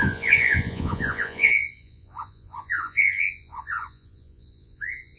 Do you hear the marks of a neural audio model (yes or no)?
yes